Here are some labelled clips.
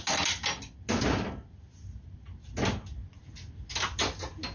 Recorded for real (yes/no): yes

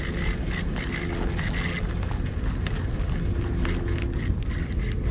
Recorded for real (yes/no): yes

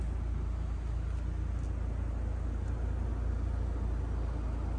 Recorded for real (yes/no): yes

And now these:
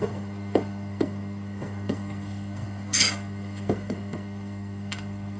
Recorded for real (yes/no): no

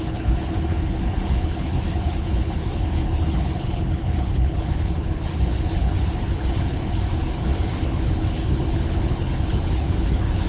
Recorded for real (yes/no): no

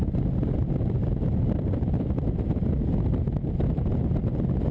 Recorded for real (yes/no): yes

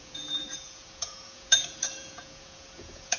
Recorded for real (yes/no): no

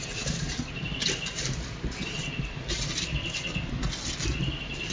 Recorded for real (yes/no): yes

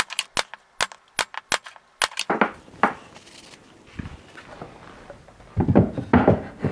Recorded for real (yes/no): yes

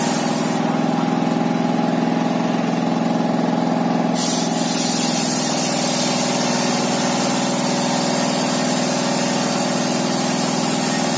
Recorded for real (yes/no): yes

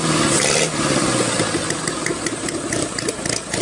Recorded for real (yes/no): yes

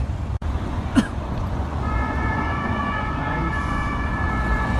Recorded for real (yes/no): no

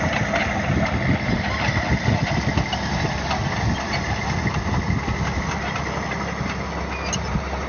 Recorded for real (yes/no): yes